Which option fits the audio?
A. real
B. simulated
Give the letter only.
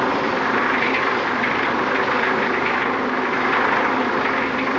B